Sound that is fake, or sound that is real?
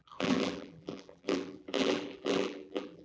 fake